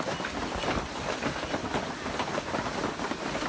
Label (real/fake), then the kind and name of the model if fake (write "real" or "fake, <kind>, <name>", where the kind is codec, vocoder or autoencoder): real